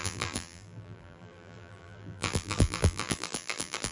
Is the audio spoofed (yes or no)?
yes